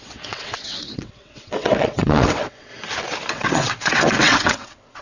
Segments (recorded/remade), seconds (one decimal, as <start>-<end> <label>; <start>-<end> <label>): 0.0-2.7 remade; 2.7-3.3 recorded; 3.3-5.0 remade